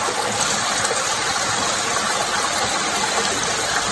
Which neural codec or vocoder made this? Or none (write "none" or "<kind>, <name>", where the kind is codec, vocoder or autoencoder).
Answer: none